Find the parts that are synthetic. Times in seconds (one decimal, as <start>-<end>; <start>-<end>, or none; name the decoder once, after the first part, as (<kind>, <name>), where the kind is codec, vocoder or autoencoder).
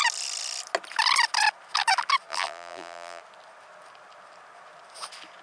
2.3-3.2 (vocoder, BigVGAN v2)